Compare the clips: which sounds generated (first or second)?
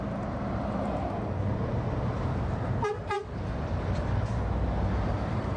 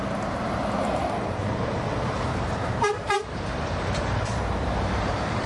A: second